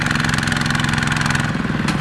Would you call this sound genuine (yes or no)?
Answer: yes